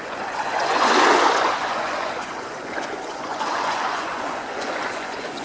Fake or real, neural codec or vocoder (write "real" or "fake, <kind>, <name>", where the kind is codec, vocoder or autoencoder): fake, vocoder, Vocos